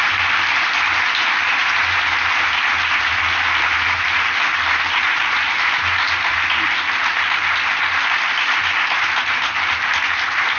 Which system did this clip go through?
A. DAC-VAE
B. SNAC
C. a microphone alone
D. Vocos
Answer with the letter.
C